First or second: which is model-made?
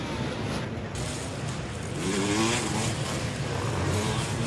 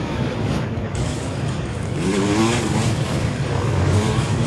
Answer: second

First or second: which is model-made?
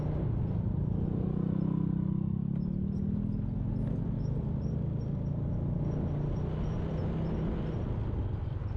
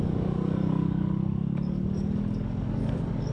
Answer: second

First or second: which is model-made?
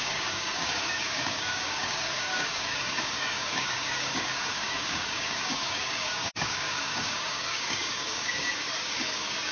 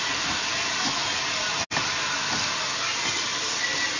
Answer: first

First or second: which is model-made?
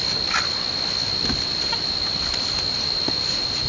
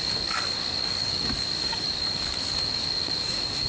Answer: second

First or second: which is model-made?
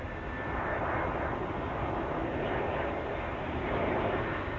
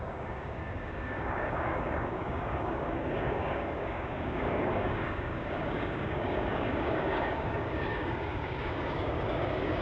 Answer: second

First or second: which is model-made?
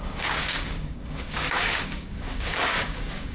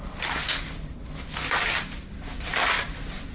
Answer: first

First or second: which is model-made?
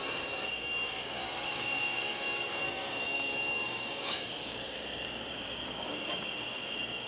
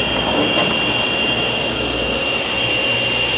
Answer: first